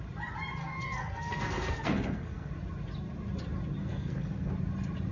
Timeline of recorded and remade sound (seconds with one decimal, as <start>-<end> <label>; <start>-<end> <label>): 0.0-0.6 recorded; 0.6-2.5 remade; 2.5-3.8 recorded; 3.8-4.5 remade; 4.5-5.1 recorded